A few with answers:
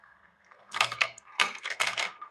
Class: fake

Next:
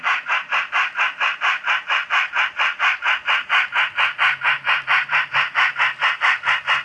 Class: real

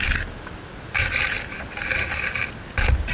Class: real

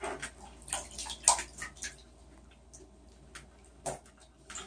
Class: real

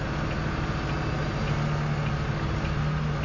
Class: real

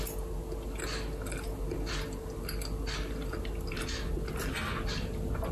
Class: real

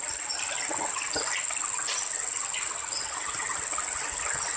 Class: real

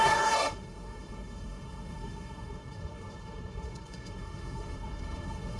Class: fake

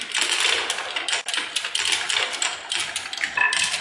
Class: real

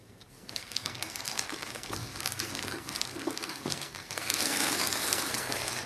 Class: fake